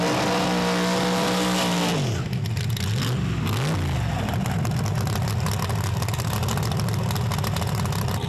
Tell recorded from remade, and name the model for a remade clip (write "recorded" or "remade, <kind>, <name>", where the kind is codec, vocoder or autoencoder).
recorded